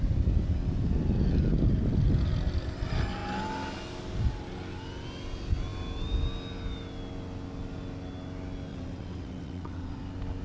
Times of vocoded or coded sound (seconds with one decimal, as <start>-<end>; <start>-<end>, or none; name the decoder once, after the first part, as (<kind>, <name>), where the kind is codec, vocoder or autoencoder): 8.7-10.0 (vocoder, WaveNeXt)